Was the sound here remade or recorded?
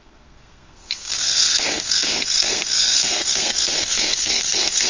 remade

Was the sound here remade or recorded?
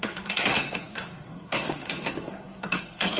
remade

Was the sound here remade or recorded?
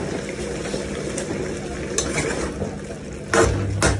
recorded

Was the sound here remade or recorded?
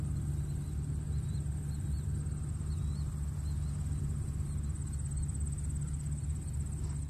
recorded